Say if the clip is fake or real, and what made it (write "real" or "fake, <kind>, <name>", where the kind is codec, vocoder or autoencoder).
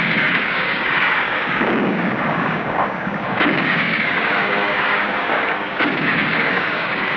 fake, codec, DAC